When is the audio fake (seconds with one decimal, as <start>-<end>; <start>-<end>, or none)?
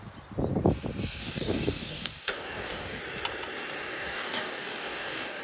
1.2-3.0; 3.9-5.4